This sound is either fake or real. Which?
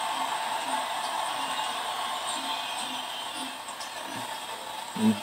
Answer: fake